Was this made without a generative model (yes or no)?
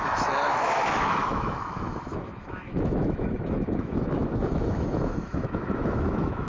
no